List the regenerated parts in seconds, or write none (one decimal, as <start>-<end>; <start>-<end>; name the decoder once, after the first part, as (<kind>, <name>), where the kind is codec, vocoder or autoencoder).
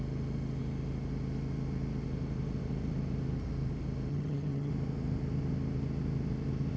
4.1-4.7 (vocoder, HiFi-GAN)